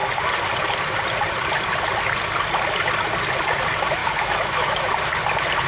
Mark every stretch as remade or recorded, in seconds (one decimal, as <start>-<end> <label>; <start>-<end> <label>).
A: 0.0-4.0 recorded; 4.0-4.9 remade; 4.9-5.7 recorded